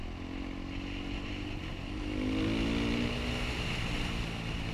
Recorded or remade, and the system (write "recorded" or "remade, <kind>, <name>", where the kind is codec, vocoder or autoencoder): recorded